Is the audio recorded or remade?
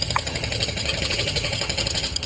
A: remade